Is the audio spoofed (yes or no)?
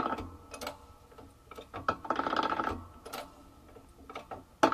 no